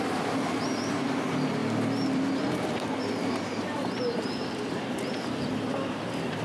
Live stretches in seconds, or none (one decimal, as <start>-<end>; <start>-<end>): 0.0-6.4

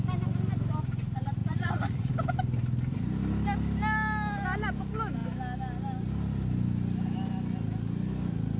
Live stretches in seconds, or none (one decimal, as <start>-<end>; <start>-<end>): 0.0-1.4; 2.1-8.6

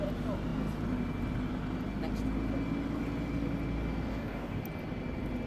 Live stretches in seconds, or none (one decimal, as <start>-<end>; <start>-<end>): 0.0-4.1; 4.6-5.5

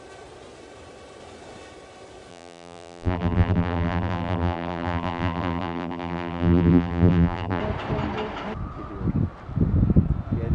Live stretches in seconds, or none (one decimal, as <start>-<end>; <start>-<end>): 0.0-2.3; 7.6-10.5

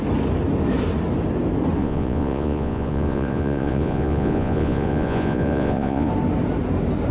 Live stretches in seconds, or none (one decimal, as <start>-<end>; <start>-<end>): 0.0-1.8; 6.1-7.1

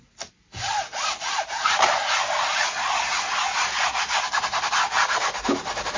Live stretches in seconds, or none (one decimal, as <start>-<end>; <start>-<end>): 0.0-6.0